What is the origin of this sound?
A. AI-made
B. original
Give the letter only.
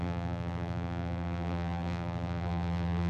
A